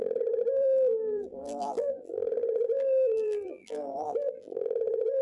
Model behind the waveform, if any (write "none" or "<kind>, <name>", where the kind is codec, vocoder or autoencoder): vocoder, BigVGAN v2